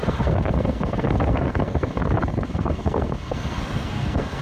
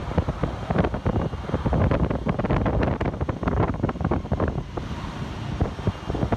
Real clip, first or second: second